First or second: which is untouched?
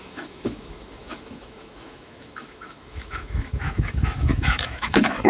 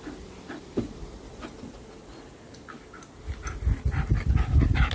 second